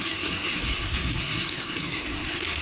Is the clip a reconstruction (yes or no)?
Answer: yes